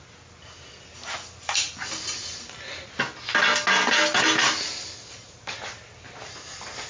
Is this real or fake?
real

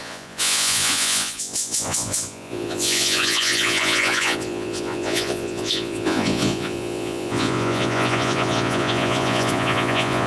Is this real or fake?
fake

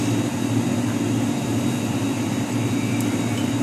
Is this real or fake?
real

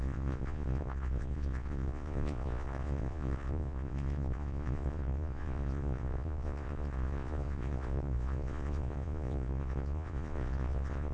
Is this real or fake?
fake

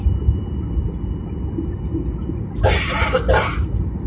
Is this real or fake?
real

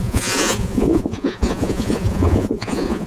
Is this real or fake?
fake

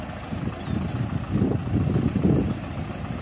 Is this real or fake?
real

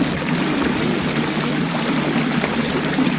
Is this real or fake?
real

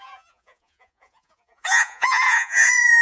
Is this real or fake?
fake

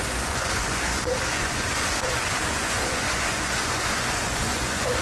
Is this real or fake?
fake